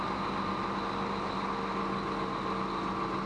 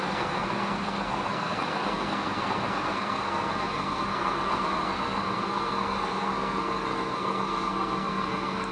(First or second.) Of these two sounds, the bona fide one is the first